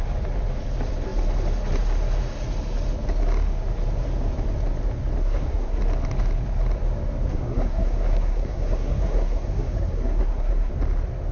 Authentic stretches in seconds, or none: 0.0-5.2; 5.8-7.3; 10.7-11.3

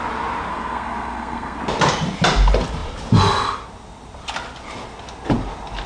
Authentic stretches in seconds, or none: 0.0-0.5; 1.6-5.9

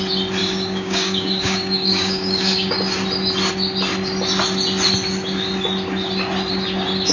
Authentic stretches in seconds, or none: 0.0-0.4; 2.7-7.1

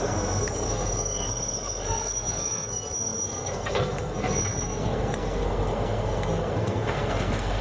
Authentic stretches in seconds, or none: none

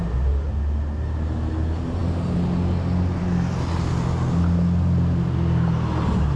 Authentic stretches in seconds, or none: 0.0-6.4

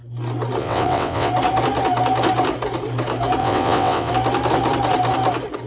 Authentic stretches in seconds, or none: 0.0-0.6; 1.3-3.4; 4.1-5.7

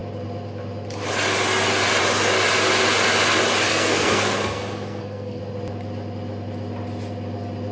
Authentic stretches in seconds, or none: 0.0-3.7; 5.4-7.7

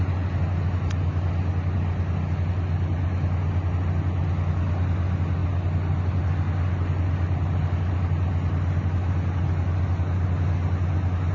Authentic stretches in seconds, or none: 0.0-11.3